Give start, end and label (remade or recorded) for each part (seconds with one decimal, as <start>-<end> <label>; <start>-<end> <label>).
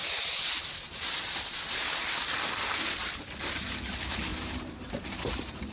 0.0-3.4 recorded; 3.4-5.7 remade